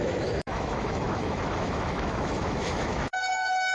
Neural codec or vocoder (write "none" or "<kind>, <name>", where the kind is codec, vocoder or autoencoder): autoencoder, DAC-VAE